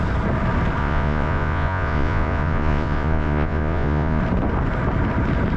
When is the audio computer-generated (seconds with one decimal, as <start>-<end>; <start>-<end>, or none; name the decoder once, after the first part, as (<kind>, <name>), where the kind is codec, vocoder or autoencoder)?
0.8-4.2 (vocoder, Vocos)